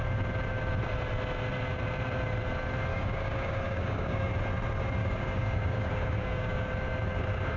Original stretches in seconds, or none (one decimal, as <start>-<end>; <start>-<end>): 0.0-2.9; 4.3-5.0; 6.7-7.6

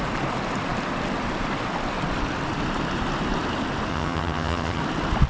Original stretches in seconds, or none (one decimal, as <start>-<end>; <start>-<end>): 0.0-3.9; 4.8-5.3

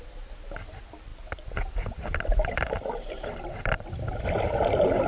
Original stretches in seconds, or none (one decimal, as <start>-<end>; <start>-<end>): 0.0-1.1; 4.2-5.1

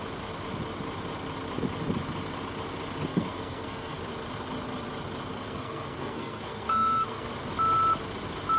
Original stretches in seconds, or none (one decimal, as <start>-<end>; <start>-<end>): 0.0-3.1; 4.0-5.3; 7.3-8.6

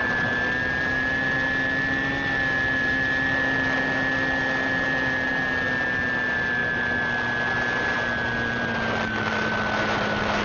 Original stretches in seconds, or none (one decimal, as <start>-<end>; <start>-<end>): 0.0-10.4